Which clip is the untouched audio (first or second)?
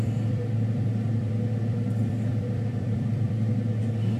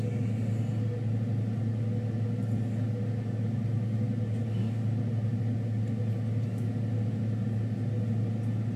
second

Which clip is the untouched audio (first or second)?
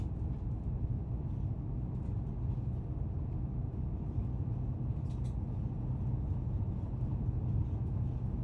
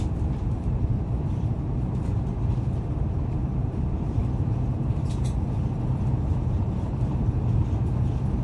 first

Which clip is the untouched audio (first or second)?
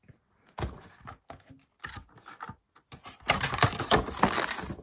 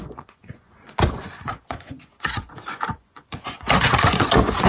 first